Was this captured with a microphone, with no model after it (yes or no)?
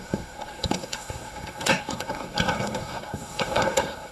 no